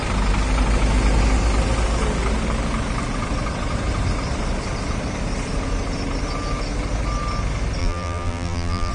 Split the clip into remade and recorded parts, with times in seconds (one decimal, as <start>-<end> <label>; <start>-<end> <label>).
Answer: 0.0-7.8 recorded; 7.8-8.9 remade